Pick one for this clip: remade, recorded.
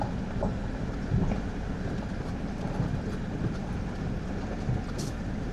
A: remade